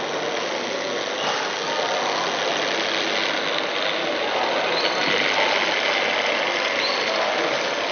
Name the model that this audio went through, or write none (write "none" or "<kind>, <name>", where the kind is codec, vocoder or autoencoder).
none